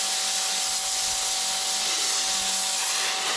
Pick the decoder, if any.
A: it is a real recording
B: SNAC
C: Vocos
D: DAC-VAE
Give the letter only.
A